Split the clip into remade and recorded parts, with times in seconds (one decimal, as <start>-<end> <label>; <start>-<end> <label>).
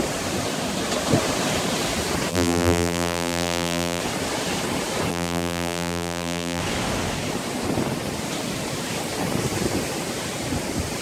0.0-2.3 recorded; 2.3-4.0 remade; 4.0-5.1 recorded; 5.1-6.6 remade; 6.6-11.0 recorded